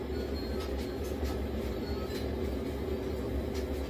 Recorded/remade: recorded